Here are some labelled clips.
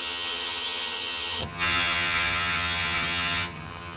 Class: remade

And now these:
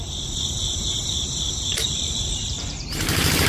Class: remade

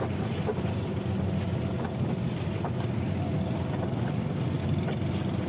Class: recorded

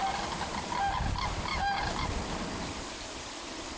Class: recorded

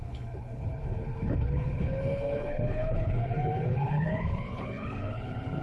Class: remade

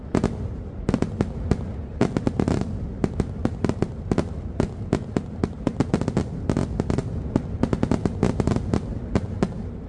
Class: recorded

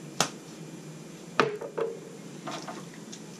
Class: recorded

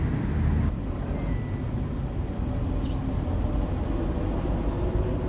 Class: recorded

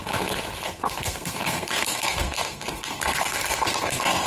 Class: remade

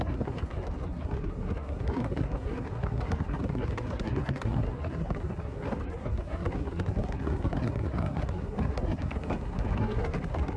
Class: remade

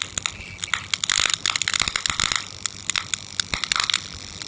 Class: recorded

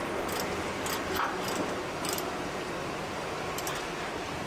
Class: recorded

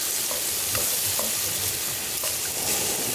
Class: recorded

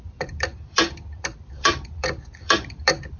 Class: remade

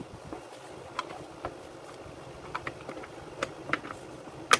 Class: recorded